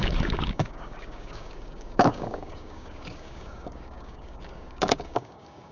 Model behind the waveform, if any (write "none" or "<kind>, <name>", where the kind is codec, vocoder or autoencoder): codec, DAC